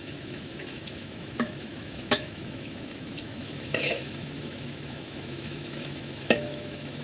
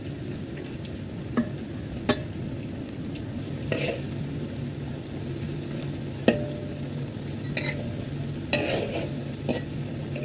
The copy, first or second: first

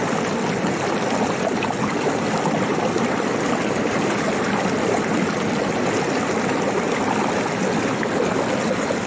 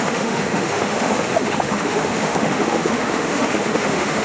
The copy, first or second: second